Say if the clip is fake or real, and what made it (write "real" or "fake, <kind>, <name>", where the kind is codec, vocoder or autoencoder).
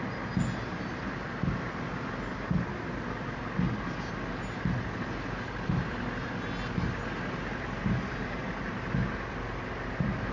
real